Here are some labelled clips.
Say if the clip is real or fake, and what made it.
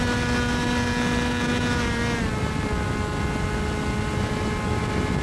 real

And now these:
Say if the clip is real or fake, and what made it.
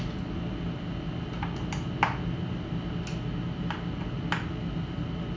real